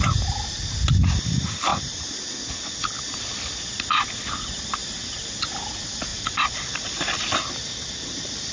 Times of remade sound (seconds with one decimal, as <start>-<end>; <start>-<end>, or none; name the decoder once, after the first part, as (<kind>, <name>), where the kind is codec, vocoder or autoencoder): 4.8-5.3 (vocoder, BigVGAN v2); 6.1-7.5